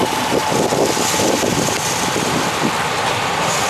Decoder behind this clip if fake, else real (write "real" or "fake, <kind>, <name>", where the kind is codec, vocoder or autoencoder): real